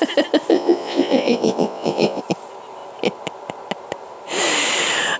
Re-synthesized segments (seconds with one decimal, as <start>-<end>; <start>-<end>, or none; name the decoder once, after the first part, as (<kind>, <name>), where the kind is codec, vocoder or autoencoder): 0.5-2.2 (vocoder, Vocos)